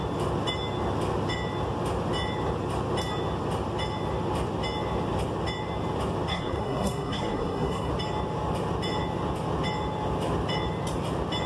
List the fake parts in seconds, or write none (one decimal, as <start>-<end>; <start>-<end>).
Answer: 6.3-7.9